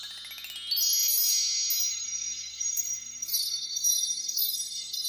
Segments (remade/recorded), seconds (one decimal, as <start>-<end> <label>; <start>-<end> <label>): 0.0-1.9 recorded; 1.9-5.1 remade